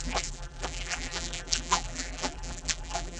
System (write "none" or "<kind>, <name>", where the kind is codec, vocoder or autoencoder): vocoder, BigVGAN v2